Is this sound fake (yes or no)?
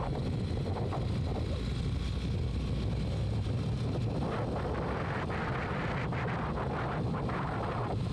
no